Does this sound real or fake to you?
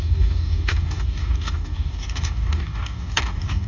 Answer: fake